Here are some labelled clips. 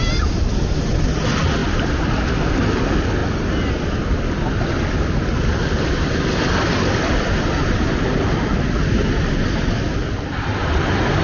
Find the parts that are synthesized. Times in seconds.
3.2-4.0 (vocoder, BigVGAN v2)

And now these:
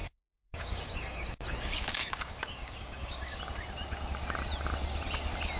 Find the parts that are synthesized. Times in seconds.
0.0-3.4 (codec, DAC)

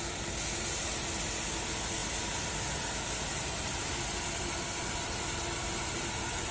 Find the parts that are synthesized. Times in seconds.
none

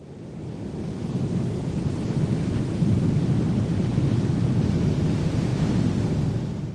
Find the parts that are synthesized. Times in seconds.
none

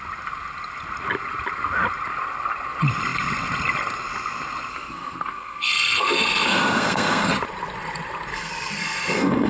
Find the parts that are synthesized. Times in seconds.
4.7-7.3 (codec, SNAC); 8.3-9.5

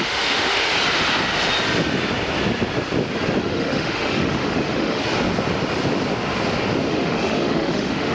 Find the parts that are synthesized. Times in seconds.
0.0-0.7 (autoencoder, DAC-VAE); 3.4-5.0; 6.9-8.1